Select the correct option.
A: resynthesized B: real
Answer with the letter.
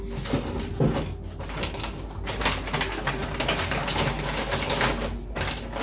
B